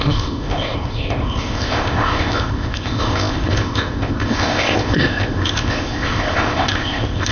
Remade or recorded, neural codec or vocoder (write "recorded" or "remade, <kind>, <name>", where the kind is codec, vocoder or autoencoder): remade, codec, ZipCodec